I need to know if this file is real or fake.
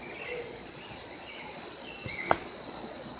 fake